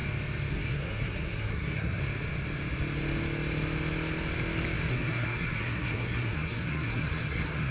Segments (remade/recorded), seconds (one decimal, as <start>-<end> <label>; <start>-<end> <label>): 0.0-0.5 recorded; 0.5-2.0 remade; 2.0-4.9 recorded; 4.9-7.7 remade

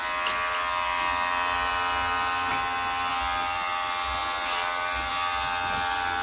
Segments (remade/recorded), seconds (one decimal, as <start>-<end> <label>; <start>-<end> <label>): 0.0-6.2 recorded

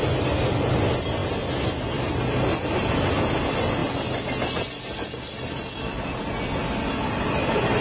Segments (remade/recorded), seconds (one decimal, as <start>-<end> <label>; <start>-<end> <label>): 0.0-7.8 recorded